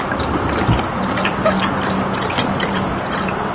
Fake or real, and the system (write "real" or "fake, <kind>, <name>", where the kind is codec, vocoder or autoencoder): real